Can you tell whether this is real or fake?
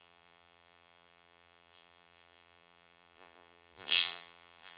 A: fake